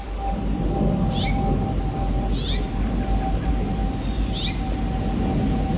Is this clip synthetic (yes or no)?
no